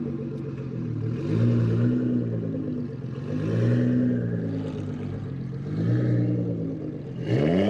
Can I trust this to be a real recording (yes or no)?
yes